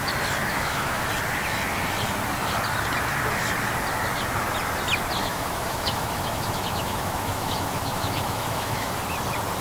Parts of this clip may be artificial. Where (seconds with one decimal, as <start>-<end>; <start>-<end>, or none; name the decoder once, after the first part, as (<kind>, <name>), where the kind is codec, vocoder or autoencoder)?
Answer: 0.4-1.0 (autoencoder, DAC-VAE); 5.2-9.0